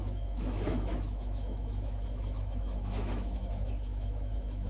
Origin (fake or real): fake